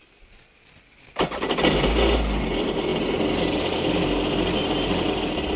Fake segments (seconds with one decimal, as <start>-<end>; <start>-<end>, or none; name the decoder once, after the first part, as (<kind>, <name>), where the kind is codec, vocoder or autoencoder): none